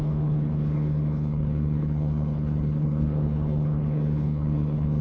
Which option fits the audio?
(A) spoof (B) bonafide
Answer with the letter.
A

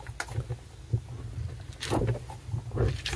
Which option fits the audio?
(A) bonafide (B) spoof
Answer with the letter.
A